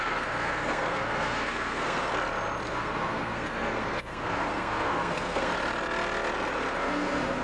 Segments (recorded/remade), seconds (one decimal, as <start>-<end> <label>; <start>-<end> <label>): 0.0-2.1 remade; 2.1-2.7 recorded; 2.7-5.5 remade; 5.5-6.7 recorded; 6.7-7.4 remade